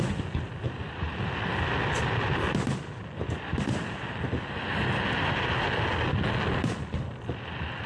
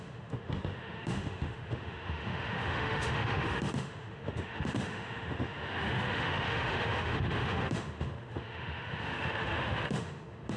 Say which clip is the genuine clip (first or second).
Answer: first